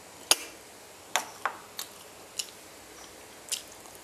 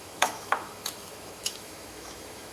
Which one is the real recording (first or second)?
first